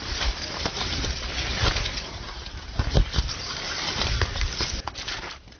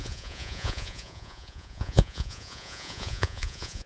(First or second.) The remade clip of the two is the second